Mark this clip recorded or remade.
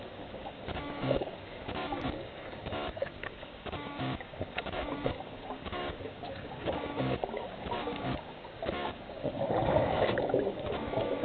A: remade